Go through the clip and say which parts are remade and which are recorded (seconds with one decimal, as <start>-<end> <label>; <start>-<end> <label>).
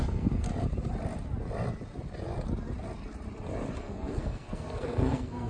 0.0-0.5 remade; 0.5-3.8 recorded; 3.8-5.5 remade